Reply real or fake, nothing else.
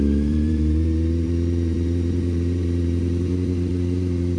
fake